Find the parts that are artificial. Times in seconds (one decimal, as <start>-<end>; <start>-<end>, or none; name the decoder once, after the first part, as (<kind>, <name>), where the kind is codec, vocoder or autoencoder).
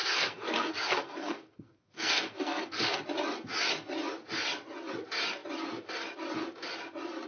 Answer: 0.0-3.0 (codec, SNAC)